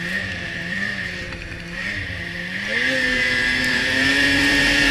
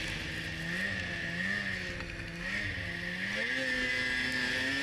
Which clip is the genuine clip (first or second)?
second